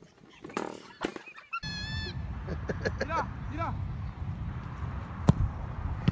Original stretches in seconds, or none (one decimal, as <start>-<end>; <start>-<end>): 0.0-6.1